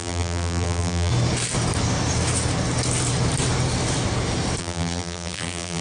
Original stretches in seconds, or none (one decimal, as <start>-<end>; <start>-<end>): 1.1-4.6